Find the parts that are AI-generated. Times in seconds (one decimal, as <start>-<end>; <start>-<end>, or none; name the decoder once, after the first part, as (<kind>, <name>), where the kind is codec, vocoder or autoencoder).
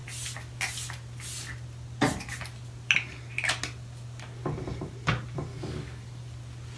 5.5-6.0 (codec, DAC)